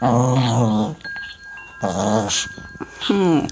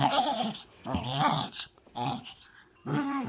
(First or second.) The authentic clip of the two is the first